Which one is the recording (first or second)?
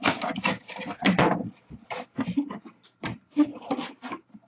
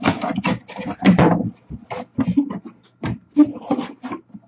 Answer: second